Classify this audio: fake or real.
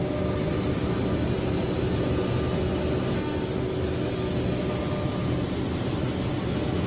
real